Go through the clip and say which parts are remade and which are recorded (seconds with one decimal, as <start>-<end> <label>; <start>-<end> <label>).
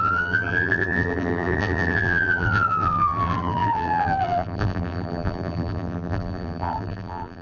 0.0-7.4 remade